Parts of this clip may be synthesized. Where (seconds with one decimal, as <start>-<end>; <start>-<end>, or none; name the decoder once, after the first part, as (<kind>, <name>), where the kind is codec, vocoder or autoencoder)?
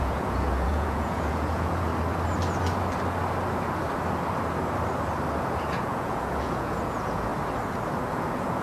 0.0-1.9 (vocoder, Vocos); 5.4-7.3; 8.1-8.6